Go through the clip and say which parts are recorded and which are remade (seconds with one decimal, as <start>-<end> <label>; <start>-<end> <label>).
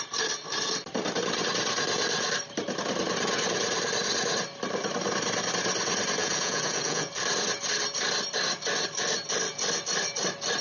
0.0-6.2 recorded; 6.2-7.1 remade; 7.1-10.6 recorded